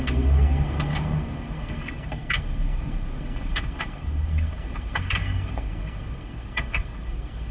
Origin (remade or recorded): remade